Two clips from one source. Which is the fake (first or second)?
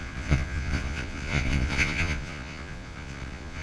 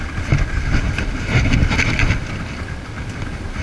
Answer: first